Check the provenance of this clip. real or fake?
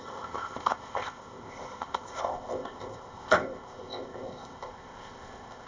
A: fake